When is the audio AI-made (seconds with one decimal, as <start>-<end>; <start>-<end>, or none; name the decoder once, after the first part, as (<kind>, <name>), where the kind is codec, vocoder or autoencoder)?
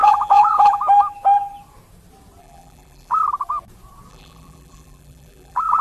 0.0-0.8 (vocoder, BigVGAN v2); 2.4-3.2; 4.1-5.8